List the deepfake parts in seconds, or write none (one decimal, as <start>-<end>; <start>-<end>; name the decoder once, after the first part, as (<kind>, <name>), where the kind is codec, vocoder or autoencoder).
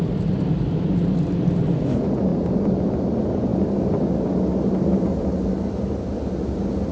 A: none